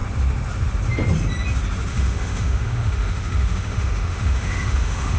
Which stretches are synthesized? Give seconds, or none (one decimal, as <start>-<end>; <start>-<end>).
1.9-5.2